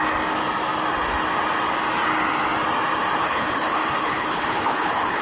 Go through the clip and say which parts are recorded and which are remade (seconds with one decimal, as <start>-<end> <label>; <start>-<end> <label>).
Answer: 0.0-3.2 recorded; 3.2-5.2 remade